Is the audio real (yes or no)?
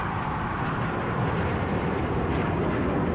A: yes